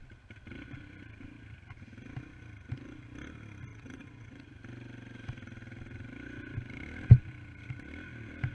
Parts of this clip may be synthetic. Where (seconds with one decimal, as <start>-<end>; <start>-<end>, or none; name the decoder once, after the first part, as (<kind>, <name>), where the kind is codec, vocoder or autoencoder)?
3.7-4.5 (vocoder, WaveNeXt)